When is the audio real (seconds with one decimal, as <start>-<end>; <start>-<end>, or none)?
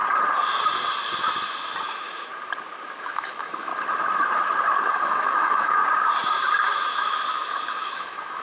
0.0-1.9; 2.3-3.0; 3.7-4.9; 5.8-6.8